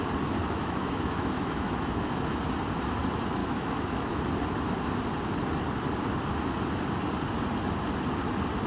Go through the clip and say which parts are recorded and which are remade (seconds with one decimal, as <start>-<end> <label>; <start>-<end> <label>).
0.0-0.4 recorded; 0.4-2.4 remade; 2.4-3.4 recorded; 3.4-4.2 remade; 4.2-8.7 recorded